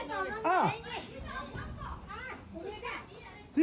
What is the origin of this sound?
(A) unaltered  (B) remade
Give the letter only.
A